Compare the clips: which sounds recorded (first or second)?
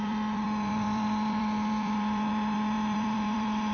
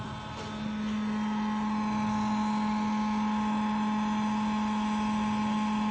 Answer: second